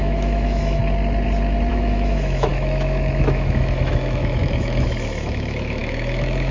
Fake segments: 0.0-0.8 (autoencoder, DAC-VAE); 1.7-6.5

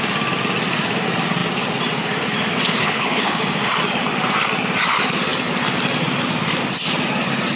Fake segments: 2.8-3.4 (codec, HILCodec)